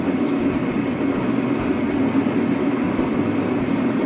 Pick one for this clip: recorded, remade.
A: recorded